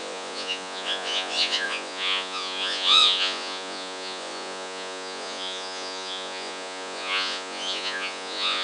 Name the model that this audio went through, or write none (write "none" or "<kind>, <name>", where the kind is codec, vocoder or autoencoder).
vocoder, Vocos